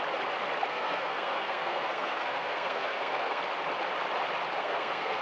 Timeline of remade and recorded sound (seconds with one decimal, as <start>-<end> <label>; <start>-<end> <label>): 0.0-0.7 recorded; 0.7-3.4 remade; 3.4-4.6 recorded; 4.6-5.2 remade